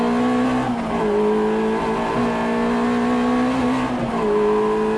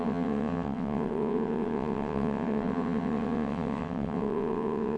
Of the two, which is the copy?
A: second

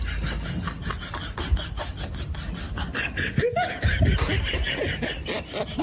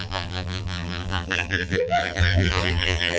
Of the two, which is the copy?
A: second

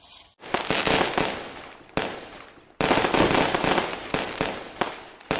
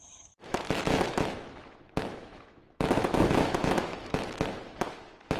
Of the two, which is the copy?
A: second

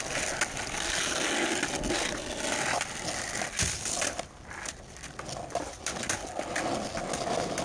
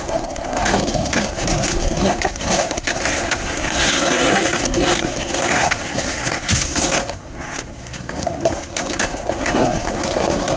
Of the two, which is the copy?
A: second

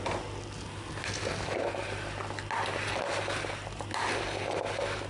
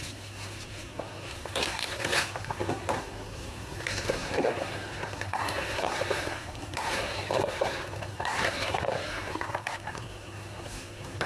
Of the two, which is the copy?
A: second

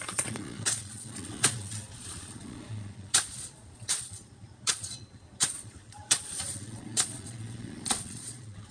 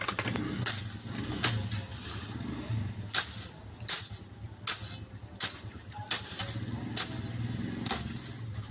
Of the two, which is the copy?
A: first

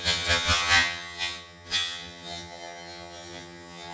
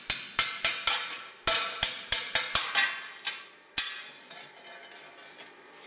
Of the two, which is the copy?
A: first